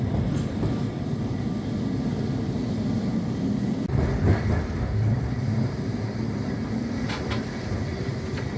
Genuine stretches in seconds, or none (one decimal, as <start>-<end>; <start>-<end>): 0.0-8.6